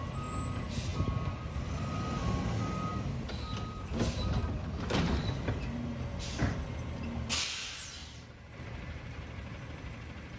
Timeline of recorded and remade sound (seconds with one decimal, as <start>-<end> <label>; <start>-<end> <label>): 0.0-8.0 recorded; 8.0-8.6 remade; 8.6-10.4 recorded